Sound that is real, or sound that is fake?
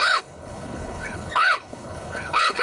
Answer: fake